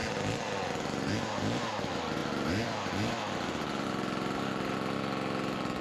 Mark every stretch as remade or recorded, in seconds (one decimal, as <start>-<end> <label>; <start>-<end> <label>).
0.0-5.8 recorded